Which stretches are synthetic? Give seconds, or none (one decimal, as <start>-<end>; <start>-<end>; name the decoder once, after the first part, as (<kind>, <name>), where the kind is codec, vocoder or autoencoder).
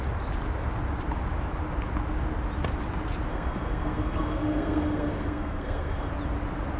3.3-6.1 (codec, SNAC)